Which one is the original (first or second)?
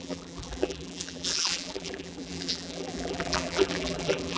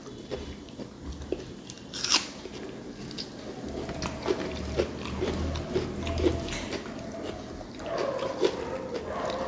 second